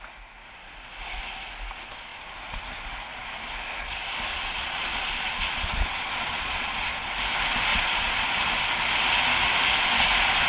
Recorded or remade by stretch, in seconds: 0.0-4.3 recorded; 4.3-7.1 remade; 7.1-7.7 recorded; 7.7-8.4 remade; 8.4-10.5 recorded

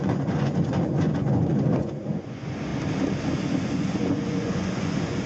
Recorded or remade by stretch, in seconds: 0.0-2.7 remade; 2.7-3.6 recorded; 3.6-5.3 remade

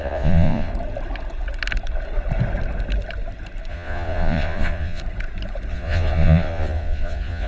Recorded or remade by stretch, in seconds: 0.0-0.7 remade; 0.7-3.7 recorded; 3.7-5.0 remade; 5.0-5.7 recorded; 5.7-7.5 remade